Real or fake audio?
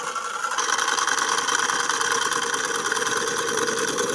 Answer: fake